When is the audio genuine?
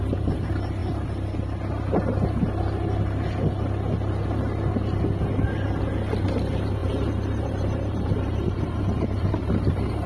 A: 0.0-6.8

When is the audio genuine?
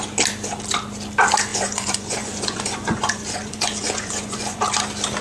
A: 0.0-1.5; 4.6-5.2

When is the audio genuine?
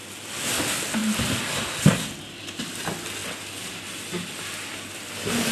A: 0.0-5.5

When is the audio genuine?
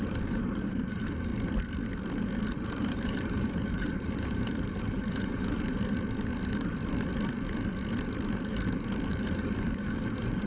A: 1.3-2.5; 5.7-9.1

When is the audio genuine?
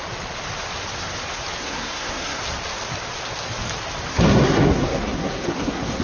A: 0.0-1.6; 2.4-4.1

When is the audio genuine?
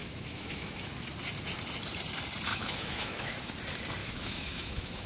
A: 0.9-2.5; 3.5-4.0